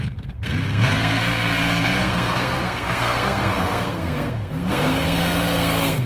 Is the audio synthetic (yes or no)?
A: yes